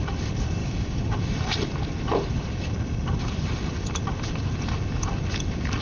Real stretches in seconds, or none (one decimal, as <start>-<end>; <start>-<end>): 0.0-0.6; 1.2-5.8